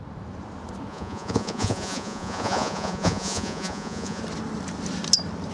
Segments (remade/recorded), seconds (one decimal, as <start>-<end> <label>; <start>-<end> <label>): 0.0-0.9 recorded; 0.9-4.2 remade; 4.2-5.5 recorded